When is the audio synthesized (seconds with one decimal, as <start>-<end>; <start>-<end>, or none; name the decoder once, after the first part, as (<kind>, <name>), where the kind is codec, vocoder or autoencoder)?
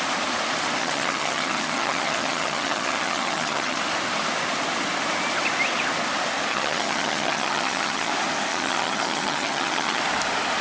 0.8-3.8 (vocoder, HiFi-GAN); 6.5-8.1; 8.5-10.0